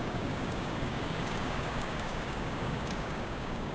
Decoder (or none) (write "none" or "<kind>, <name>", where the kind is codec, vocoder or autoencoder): codec, DAC